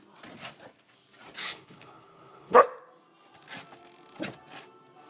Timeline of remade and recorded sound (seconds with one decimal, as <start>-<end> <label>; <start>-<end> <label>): 0.0-1.4 recorded; 1.4-2.6 remade; 2.6-5.1 recorded